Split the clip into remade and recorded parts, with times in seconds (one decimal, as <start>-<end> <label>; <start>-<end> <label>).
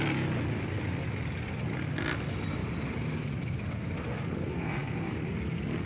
0.0-5.9 recorded